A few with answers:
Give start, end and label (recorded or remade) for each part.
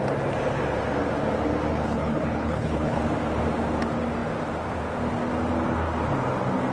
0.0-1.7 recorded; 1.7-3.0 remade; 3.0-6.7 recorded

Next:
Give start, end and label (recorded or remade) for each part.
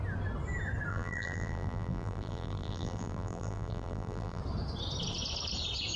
0.0-0.9 recorded; 0.9-4.4 remade; 4.4-6.0 recorded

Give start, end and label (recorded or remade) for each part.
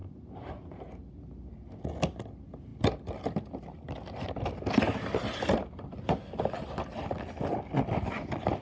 0.0-8.6 recorded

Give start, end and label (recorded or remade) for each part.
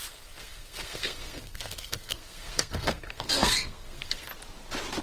0.0-4.3 remade; 4.3-5.0 recorded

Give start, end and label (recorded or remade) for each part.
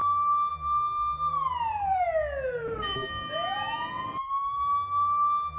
0.0-5.6 recorded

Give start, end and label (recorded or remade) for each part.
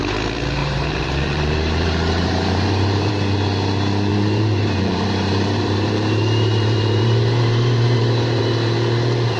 0.0-0.6 recorded; 0.6-3.1 remade; 3.1-4.1 recorded; 4.1-8.4 remade; 8.4-9.4 recorded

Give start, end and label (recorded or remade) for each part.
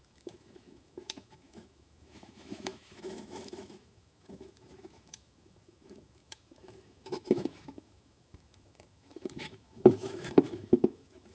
0.0-11.3 remade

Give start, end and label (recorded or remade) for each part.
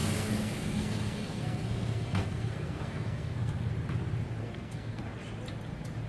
0.0-3.7 remade; 3.7-4.4 recorded; 4.4-5.0 remade; 5.0-6.1 recorded